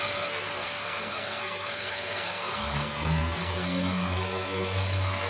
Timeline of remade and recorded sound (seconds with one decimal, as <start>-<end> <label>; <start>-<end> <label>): 0.0-5.3 remade